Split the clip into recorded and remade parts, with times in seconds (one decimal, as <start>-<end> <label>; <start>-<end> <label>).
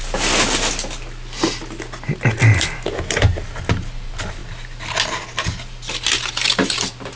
0.0-7.2 recorded